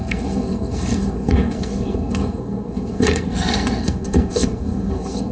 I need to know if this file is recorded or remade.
remade